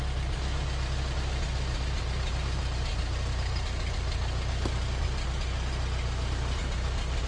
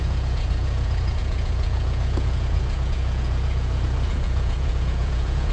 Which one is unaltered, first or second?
first